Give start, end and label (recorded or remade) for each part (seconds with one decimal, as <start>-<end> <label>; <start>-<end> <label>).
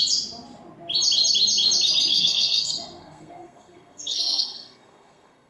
0.0-2.1 recorded; 2.1-5.5 remade